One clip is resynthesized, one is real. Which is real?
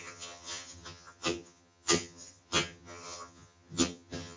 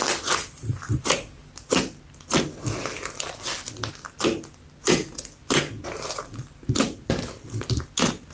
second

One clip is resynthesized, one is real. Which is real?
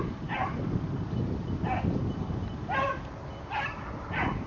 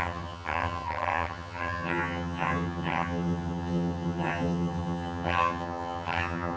first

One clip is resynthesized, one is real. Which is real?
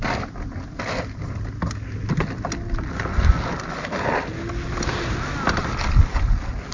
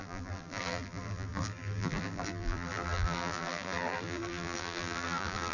first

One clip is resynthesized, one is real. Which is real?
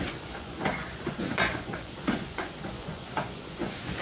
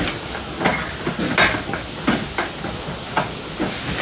second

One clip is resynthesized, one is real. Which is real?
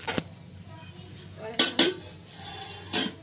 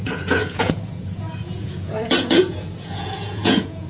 first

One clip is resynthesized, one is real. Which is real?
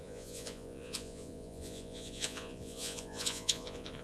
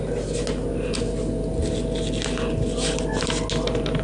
second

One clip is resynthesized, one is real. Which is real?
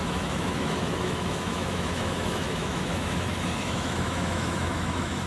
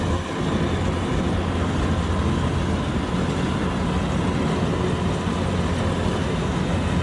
second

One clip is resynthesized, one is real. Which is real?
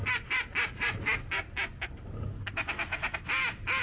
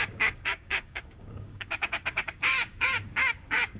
first